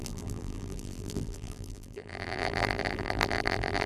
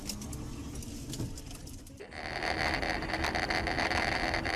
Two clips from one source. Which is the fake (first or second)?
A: first